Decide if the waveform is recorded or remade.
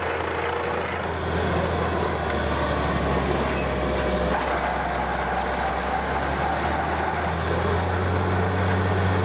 recorded